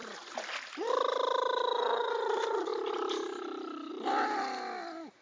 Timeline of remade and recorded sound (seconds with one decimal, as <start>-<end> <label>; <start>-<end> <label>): 0.0-2.7 recorded; 2.7-3.9 remade; 3.9-5.2 recorded